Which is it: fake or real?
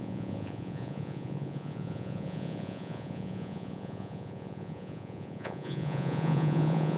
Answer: fake